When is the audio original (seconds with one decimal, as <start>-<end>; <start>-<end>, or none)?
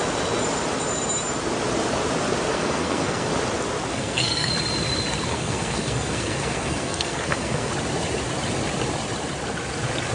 0.0-2.5; 3.3-3.9; 4.5-5.3; 7.7-10.1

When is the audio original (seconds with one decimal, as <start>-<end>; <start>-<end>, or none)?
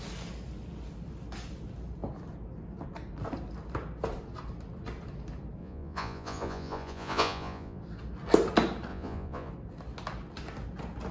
0.0-5.6; 7.8-8.9; 9.5-11.1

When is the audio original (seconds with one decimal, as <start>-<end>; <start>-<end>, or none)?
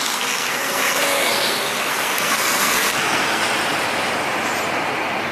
3.4-5.3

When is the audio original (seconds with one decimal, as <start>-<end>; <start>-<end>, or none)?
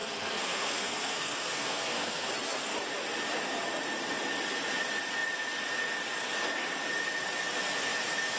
2.3-8.4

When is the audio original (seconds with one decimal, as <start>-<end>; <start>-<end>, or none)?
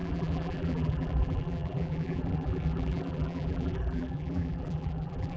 none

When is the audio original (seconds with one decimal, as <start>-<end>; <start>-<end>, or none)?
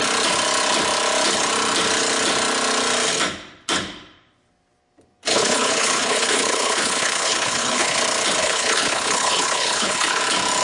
0.0-5.3; 8.0-8.4; 10.2-10.6